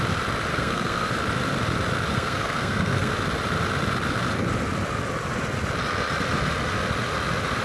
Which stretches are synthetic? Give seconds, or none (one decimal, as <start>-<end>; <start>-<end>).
0.5-1.1; 2.1-3.1

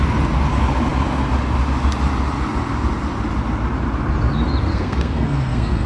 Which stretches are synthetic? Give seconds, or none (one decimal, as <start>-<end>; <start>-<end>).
4.7-5.9

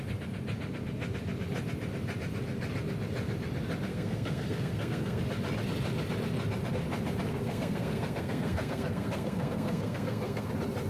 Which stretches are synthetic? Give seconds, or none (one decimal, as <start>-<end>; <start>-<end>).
3.9-5.2; 7.3-10.5

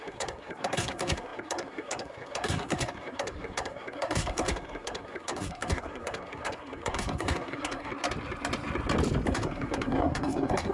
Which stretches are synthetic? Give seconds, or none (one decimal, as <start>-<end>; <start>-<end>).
0.0-7.9; 9.3-10.7

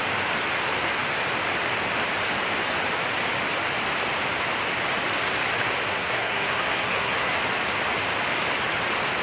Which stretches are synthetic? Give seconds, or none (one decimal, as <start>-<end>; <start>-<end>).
5.9-7.4

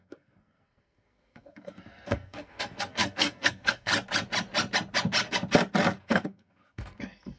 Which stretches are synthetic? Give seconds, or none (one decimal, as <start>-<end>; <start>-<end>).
0.0-3.9; 6.0-7.4

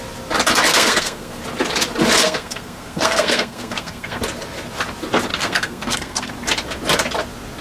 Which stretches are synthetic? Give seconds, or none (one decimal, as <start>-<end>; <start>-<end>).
0.7-1.4; 2.2-4.2; 5.3-6.3

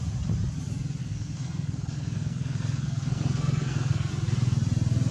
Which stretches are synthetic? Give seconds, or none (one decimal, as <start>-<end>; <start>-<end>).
1.0-4.1